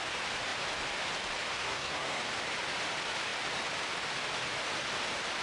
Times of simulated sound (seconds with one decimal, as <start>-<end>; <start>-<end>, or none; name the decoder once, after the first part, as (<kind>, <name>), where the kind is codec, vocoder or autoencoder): 1.5-2.2 (codec, SNAC)